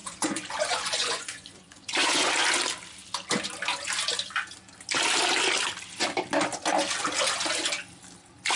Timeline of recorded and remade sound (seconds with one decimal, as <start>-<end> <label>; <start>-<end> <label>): 0.0-2.3 remade; 2.3-8.6 recorded